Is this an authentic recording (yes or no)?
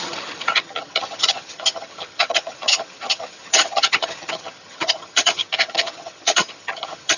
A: no